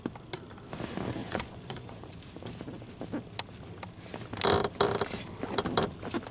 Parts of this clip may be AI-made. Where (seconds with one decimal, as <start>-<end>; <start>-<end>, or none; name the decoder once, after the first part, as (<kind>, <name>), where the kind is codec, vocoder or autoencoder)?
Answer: 1.2-2.1 (vocoder, Vocos)